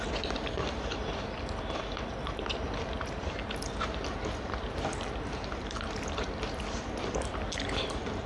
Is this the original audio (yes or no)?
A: no